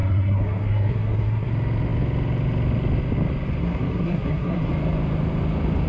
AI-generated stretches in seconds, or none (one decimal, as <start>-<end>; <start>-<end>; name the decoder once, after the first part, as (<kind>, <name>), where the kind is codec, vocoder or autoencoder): 0.0-1.5 (codec, SNAC); 3.6-4.7